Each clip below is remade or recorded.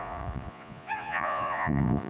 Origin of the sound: remade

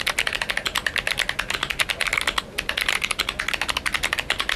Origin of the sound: recorded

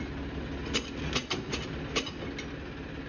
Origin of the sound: recorded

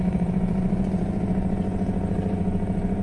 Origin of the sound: remade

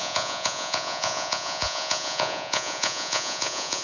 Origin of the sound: remade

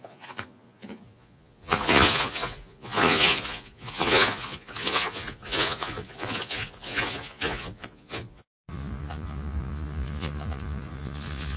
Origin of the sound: remade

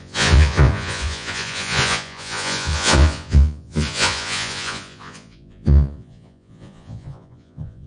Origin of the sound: remade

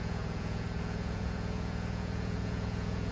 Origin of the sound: remade